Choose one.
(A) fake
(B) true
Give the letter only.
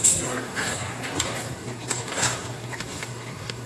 A